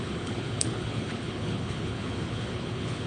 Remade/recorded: remade